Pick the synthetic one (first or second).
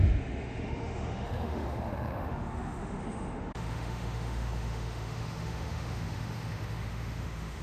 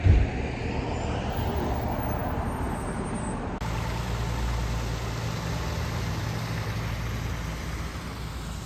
first